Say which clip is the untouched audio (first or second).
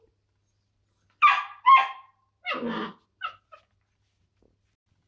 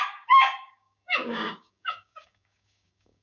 first